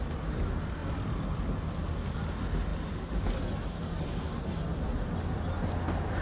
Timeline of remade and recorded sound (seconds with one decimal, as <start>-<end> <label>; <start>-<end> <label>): 0.0-6.2 recorded

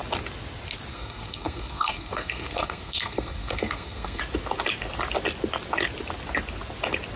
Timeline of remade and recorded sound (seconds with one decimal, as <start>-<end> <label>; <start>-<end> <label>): 0.0-0.9 recorded; 0.9-4.2 remade; 4.2-7.2 recorded

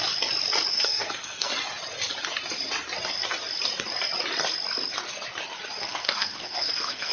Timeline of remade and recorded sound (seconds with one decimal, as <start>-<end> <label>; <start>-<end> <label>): 0.0-0.7 recorded; 0.7-1.5 remade; 1.5-5.8 recorded; 5.8-7.1 remade

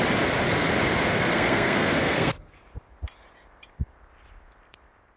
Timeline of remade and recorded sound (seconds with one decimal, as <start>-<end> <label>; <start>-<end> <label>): 0.0-1.1 recorded; 1.1-2.6 remade; 2.6-5.2 recorded